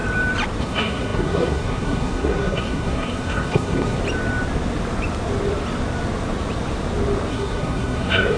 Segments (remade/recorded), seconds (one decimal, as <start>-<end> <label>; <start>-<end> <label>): 0.0-0.6 recorded; 0.6-4.0 remade; 4.0-7.3 recorded; 7.3-8.4 remade